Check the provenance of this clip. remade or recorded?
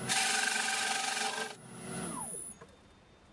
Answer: recorded